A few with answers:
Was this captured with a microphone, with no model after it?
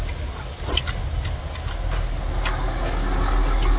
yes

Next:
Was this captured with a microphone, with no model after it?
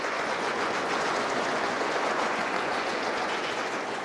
no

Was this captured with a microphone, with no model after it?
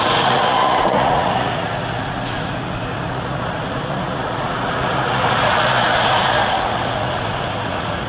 no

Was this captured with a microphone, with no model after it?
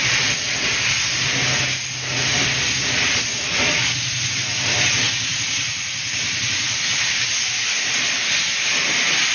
yes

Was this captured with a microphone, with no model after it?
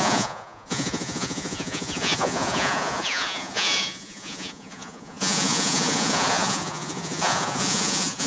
no